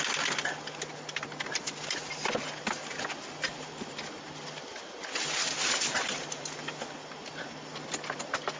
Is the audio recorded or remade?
recorded